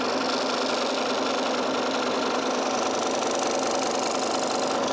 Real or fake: real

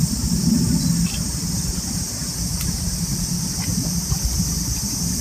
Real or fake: real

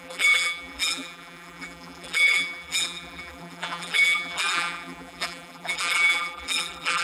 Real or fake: fake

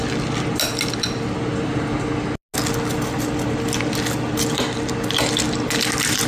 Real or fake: real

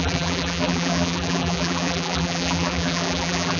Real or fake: fake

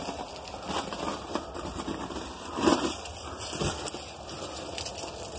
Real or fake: real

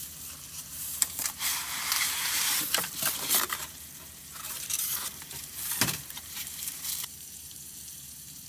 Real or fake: fake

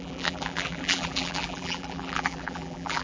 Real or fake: fake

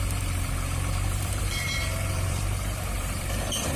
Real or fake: fake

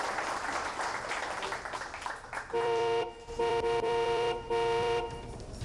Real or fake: fake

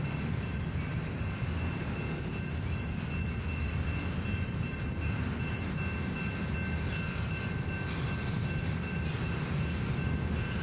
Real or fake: real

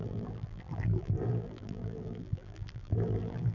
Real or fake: fake